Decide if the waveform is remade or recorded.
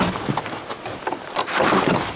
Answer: recorded